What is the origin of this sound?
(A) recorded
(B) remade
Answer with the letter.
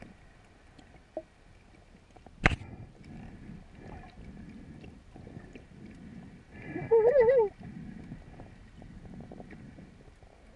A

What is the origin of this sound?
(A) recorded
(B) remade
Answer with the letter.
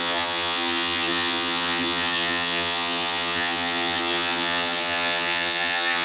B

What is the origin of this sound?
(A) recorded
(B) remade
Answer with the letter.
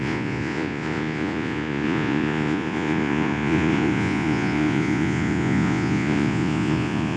B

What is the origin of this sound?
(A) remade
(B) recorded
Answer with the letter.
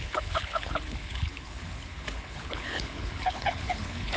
A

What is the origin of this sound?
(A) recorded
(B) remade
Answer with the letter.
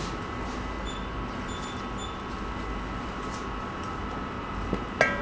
A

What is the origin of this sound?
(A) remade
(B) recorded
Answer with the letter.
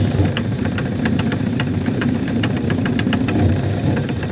A